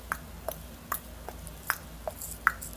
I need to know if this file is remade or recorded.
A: recorded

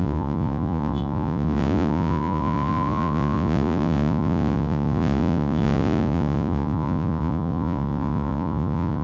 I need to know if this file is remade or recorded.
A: remade